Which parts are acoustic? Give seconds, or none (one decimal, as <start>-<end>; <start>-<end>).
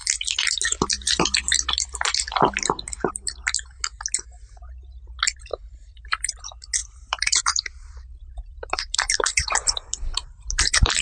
0.0-5.5; 6.3-6.8